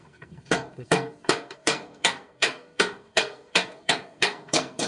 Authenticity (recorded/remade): remade